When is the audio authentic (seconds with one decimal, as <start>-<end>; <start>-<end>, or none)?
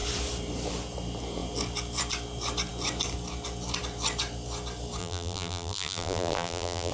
0.0-5.0